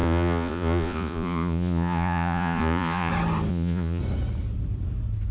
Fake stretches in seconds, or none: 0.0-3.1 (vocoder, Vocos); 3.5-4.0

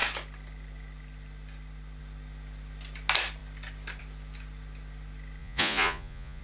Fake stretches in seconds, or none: 5.4-6.4 (vocoder, Vocos)

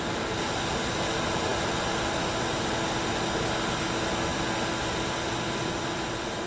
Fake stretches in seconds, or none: none

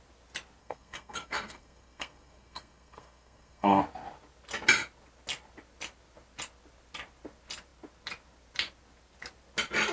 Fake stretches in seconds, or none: 0.6-3.8 (codec, SNAC)

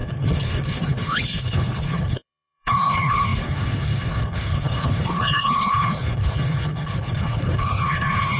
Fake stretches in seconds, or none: 0.0-8.4 (codec, HILCodec)

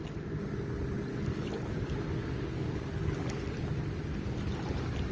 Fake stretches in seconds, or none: 1.1-1.9 (codec, DAC); 2.5-3.3